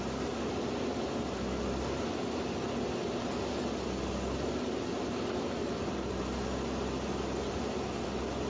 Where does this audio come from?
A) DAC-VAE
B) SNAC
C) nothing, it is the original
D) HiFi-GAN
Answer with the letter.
C